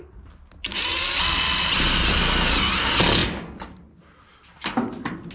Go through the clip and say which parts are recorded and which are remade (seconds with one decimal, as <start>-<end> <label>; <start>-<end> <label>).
0.0-5.3 recorded

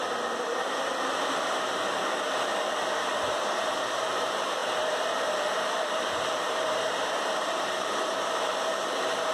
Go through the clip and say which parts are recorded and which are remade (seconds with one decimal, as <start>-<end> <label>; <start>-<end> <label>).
0.0-9.3 remade

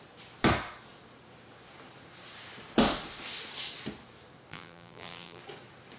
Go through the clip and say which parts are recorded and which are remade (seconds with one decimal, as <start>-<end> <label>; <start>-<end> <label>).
0.0-4.5 recorded; 4.5-5.4 remade; 5.4-6.0 recorded

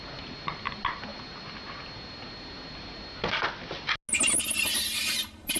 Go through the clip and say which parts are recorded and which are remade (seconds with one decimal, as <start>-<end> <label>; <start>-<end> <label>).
0.0-5.6 recorded

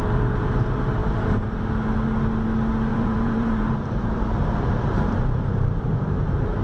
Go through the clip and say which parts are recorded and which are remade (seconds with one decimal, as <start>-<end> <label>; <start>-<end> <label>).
0.0-1.0 recorded; 1.0-1.6 remade; 1.6-2.9 recorded; 2.9-6.6 remade

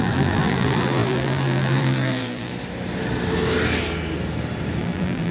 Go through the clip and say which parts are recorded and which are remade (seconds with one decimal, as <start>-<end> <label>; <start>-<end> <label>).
0.0-2.5 remade; 2.5-4.8 recorded; 4.8-5.3 remade